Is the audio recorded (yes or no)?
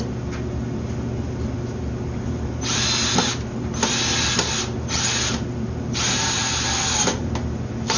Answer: yes